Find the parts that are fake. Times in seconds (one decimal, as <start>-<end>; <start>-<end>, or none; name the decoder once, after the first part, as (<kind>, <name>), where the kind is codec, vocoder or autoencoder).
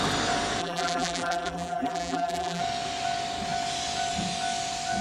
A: 0.6-2.6 (vocoder, BigVGAN v2)